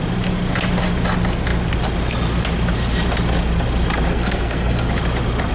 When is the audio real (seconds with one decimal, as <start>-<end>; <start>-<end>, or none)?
0.0-4.1; 4.9-5.5